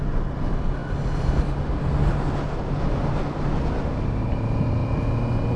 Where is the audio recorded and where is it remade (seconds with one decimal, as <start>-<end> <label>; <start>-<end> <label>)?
0.0-5.6 recorded